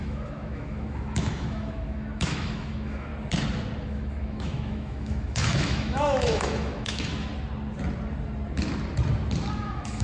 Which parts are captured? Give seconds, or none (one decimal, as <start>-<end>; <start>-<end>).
3.1-3.8; 7.3-9.6